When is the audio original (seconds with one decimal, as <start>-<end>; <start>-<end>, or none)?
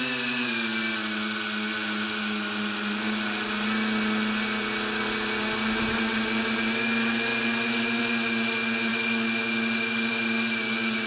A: 0.0-11.1